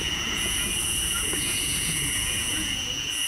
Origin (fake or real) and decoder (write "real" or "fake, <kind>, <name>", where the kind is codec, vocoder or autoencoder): fake, vocoder, Vocos